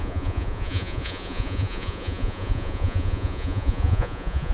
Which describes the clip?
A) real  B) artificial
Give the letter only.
B